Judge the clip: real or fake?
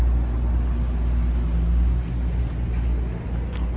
real